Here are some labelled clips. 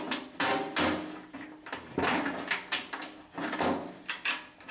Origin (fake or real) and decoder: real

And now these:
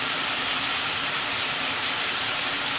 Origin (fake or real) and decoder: fake, vocoder, BigVGAN v2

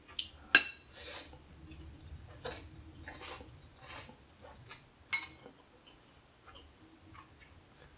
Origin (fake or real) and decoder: real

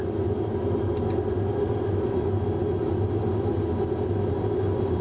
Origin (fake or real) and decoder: real